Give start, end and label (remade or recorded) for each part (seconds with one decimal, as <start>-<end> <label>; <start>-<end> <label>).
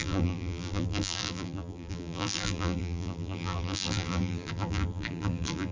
0.0-5.7 remade